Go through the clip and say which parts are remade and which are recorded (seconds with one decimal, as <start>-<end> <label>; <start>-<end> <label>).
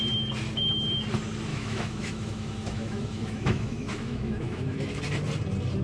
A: 0.0-1.5 recorded; 1.5-5.0 remade; 5.0-5.8 recorded